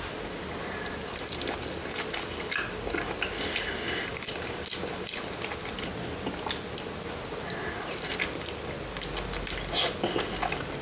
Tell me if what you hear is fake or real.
real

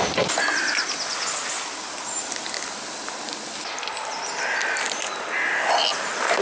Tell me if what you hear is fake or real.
real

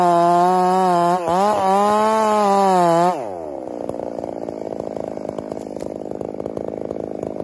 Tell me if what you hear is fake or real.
real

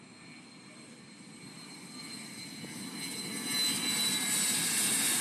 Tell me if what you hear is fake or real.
real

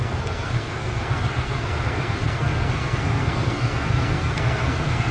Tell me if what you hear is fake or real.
fake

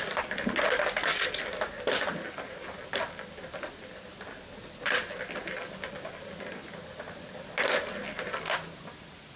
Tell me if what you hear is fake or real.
real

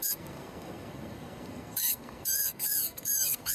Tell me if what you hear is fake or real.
fake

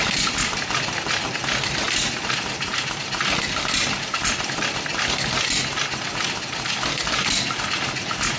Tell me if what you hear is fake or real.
real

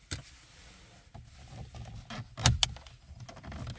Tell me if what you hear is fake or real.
real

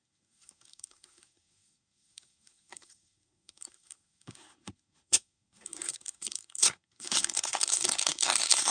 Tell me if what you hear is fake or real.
fake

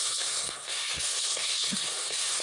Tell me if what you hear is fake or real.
fake